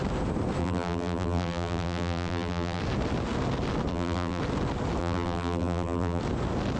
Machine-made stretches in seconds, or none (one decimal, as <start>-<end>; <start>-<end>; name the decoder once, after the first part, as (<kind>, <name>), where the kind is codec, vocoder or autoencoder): 0.6-2.8 (vocoder, BigVGAN v2); 3.9-4.4; 5.0-6.2